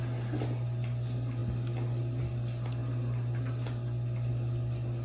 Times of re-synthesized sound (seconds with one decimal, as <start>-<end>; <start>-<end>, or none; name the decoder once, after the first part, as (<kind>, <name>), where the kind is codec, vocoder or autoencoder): none